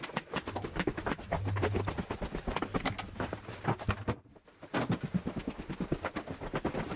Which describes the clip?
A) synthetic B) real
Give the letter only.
B